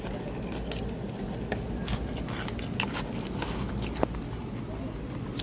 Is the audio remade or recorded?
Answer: recorded